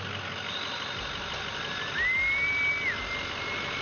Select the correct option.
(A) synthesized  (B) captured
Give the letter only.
B